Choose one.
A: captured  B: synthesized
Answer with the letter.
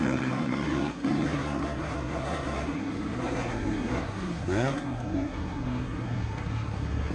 B